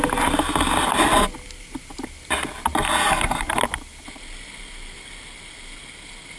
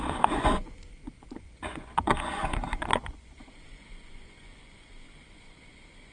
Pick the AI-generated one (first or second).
second